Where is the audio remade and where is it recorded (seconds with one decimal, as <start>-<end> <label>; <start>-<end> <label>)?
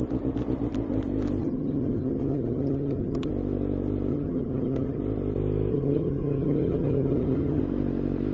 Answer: 0.0-1.4 recorded; 1.4-3.3 remade; 3.3-4.1 recorded; 4.1-5.0 remade; 5.0-5.7 recorded; 5.7-7.6 remade; 7.6-8.3 recorded